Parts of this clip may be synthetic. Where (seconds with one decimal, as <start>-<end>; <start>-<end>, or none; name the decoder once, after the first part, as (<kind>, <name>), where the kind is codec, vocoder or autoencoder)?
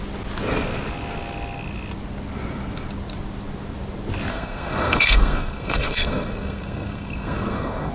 4.3-7.9 (codec, SNAC)